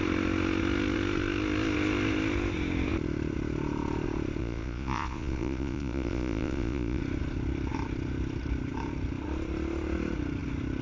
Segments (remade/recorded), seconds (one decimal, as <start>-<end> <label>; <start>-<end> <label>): 0.0-4.4 recorded; 4.4-7.0 remade; 7.0-10.8 recorded